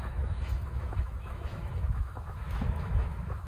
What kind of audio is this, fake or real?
fake